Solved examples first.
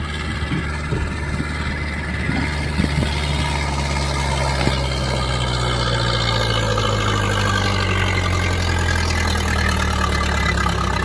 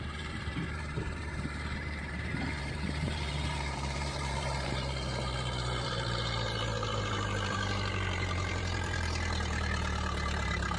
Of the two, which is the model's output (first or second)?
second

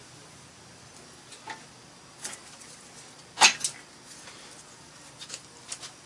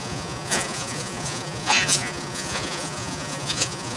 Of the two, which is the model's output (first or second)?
second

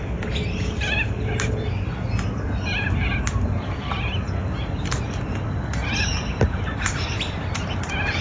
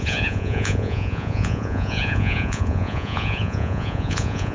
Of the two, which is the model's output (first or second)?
second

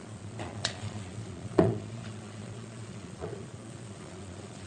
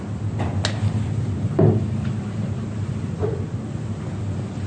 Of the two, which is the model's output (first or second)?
first